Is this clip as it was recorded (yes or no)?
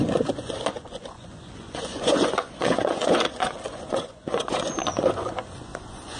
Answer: no